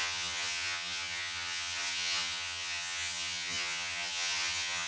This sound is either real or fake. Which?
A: fake